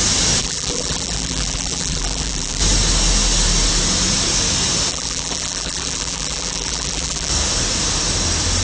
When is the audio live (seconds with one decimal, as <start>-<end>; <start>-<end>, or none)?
0.0-0.4; 2.6-4.9; 7.3-8.6